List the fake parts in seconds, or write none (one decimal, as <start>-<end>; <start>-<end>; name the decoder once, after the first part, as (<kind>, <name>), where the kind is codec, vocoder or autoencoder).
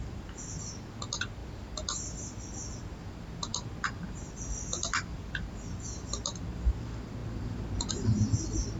none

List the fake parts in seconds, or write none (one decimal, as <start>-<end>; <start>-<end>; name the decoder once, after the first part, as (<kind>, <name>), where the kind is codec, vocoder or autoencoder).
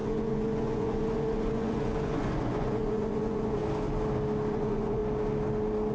0.0-3.6 (vocoder, Vocos); 4.5-5.0